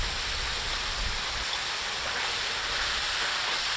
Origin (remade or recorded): recorded